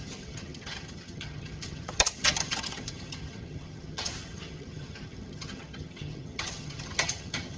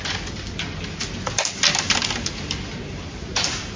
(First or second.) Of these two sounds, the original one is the second